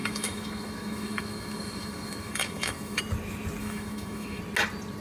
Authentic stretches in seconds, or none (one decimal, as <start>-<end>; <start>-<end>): 3.0-3.6; 4.4-5.0